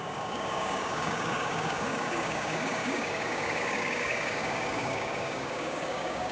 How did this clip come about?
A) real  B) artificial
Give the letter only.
B